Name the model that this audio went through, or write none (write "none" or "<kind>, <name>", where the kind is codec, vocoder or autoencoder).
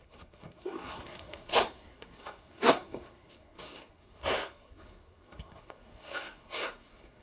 codec, SNAC